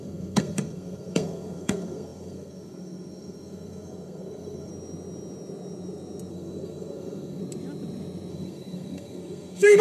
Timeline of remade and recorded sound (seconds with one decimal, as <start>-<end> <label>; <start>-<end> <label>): 0.0-4.7 remade; 4.7-6.3 recorded; 6.3-7.4 remade; 7.4-8.3 recorded; 8.3-9.8 remade